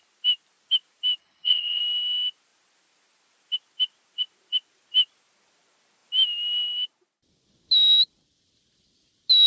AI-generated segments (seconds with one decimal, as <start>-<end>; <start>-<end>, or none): 1.2-1.8